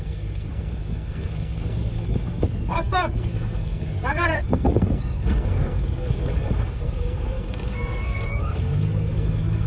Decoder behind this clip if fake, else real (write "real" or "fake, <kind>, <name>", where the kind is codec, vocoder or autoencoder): fake, codec, SNAC